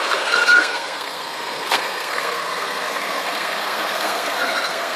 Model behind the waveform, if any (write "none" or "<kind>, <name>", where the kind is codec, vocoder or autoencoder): codec, SNAC